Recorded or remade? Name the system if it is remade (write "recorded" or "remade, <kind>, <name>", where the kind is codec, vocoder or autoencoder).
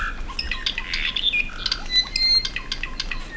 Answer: recorded